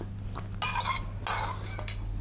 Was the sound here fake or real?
real